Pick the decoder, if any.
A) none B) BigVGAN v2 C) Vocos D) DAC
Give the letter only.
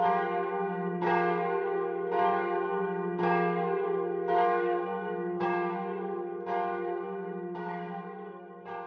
D